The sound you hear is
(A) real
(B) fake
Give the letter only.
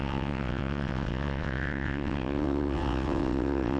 B